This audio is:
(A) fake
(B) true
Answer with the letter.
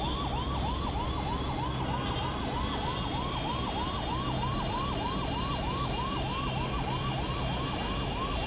B